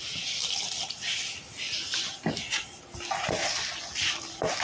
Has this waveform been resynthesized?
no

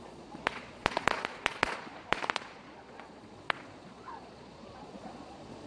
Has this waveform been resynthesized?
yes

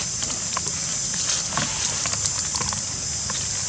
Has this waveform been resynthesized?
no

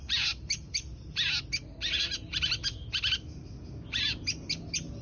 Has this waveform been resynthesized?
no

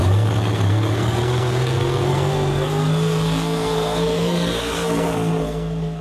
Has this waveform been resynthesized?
yes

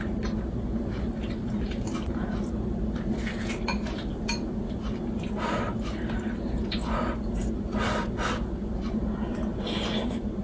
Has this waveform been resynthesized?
no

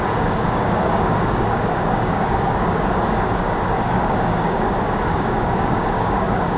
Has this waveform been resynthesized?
yes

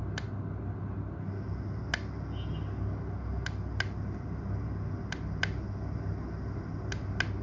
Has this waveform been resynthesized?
no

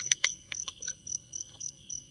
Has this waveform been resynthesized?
yes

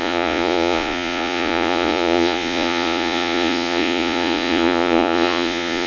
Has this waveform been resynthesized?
yes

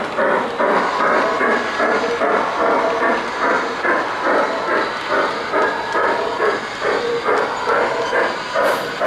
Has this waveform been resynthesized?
no